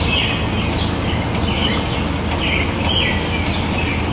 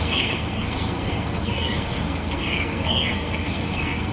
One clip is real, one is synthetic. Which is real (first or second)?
first